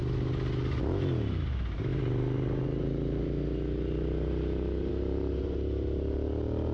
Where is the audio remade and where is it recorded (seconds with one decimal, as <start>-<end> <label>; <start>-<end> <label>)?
0.0-6.7 recorded